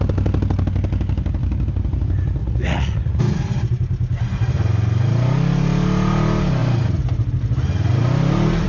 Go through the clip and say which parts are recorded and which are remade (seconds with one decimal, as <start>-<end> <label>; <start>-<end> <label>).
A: 0.0-2.4 recorded; 2.4-3.2 remade; 3.2-8.7 recorded